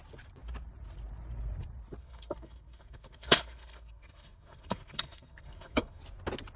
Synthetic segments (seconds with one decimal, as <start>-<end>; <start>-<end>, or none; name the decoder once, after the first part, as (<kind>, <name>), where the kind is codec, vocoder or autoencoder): 2.0-6.0 (codec, SNAC)